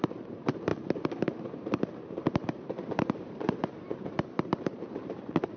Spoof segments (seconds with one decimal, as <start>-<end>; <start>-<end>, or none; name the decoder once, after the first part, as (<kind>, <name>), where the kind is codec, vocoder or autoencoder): 0.0-0.7 (vocoder, BigVGAN v2); 1.2-5.6